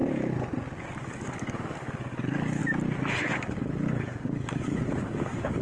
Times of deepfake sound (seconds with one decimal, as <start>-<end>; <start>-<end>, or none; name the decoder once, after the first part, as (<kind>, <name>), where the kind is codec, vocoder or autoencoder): 1.0-2.6 (codec, DAC); 3.3-5.6